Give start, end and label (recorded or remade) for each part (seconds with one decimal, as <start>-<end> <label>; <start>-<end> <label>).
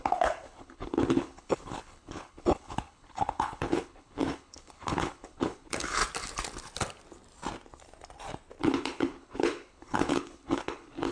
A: 0.0-6.0 remade; 6.0-8.6 recorded; 8.6-11.1 remade